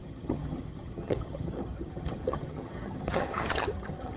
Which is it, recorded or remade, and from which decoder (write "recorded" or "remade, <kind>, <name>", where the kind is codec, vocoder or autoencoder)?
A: remade, vocoder, HiFi-GAN